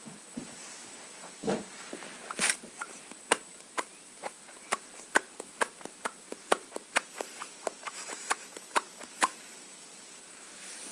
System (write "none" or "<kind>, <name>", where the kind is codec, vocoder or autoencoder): vocoder, BigVGAN v2